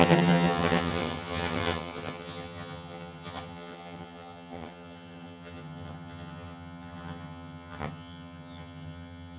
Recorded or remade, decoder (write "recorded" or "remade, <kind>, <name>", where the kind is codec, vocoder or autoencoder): remade, vocoder, HiFi-GAN